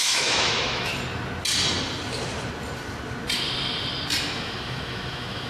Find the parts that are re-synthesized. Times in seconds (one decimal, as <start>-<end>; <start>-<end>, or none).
0.0-0.9; 4.2-5.5